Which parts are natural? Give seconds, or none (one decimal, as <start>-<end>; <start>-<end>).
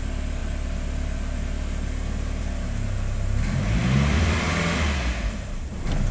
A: 0.0-3.8; 4.5-6.1